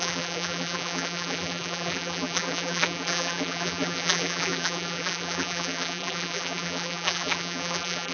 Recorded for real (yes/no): no